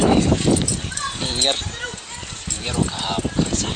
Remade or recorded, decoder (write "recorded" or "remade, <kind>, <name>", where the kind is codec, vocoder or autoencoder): remade, vocoder, BigVGAN v2